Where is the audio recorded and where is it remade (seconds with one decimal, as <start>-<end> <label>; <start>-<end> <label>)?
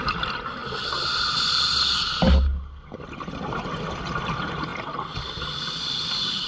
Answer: 0.0-6.5 recorded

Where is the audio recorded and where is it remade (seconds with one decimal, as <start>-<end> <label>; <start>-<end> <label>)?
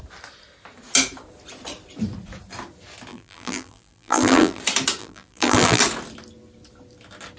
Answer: 0.0-3.1 recorded; 3.1-4.6 remade; 4.6-5.0 recorded; 5.0-5.8 remade; 5.8-7.4 recorded